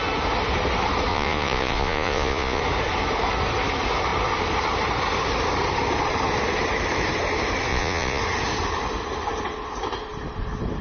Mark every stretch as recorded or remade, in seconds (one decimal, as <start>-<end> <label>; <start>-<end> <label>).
0.0-1.1 recorded; 1.1-2.6 remade; 2.6-7.7 recorded; 7.7-8.2 remade; 8.2-10.8 recorded